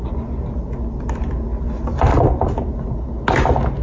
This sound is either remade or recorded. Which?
recorded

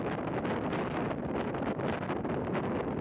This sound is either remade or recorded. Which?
recorded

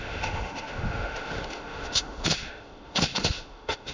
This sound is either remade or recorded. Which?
remade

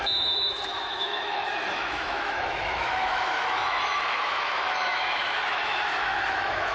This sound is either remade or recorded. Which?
remade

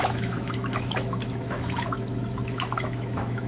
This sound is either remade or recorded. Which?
remade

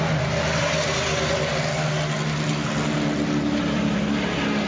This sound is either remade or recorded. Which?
recorded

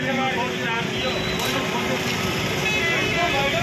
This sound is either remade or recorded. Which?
recorded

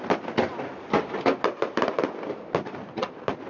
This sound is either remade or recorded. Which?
recorded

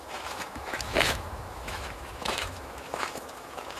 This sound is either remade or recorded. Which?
remade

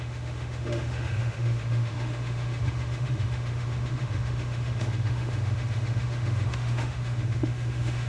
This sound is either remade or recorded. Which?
remade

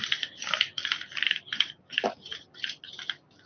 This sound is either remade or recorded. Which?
recorded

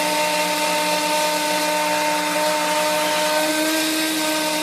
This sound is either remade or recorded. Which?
recorded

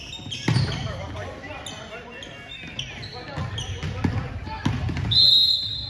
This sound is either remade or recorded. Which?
recorded